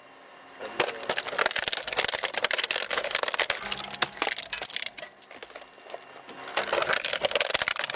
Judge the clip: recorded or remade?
recorded